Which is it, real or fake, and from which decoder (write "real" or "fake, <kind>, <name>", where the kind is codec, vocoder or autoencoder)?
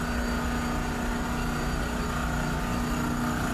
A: real